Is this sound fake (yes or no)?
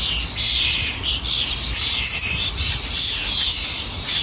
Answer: no